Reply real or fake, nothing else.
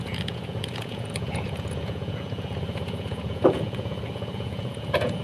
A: fake